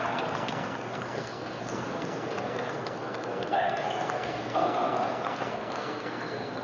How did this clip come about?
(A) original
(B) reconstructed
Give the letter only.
B